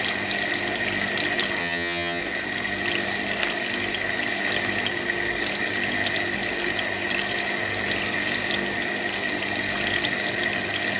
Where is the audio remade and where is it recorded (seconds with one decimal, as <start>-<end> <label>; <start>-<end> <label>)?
0.0-1.6 recorded; 1.6-2.2 remade; 2.2-11.0 recorded